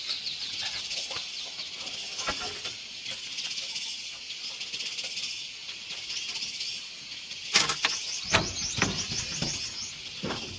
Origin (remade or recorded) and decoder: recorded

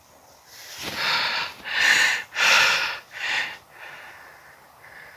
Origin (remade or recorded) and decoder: remade, vocoder, BigVGAN v2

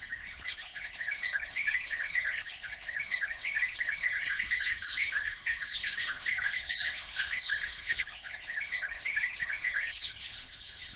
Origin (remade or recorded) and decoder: remade, codec, HILCodec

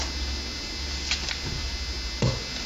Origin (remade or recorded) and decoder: recorded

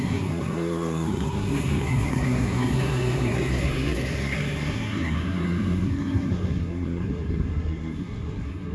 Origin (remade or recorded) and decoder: remade, codec, SNAC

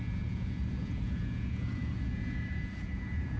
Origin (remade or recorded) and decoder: remade, vocoder, Vocos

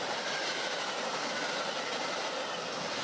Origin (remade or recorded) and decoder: recorded